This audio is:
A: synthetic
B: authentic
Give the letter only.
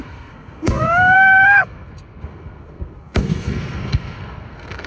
A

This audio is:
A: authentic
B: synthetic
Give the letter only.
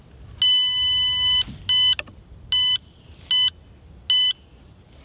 A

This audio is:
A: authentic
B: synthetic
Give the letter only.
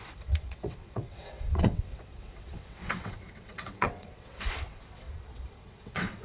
B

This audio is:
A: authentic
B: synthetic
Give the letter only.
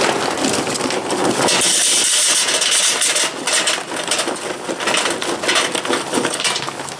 A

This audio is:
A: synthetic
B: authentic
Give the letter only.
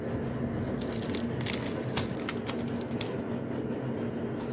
B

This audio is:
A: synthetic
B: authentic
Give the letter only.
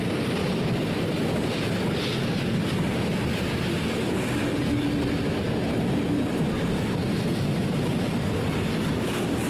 B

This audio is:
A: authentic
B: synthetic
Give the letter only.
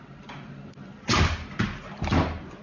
A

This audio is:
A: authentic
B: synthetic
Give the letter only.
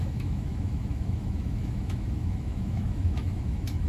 B